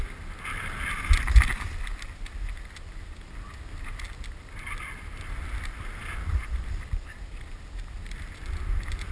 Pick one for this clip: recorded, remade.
recorded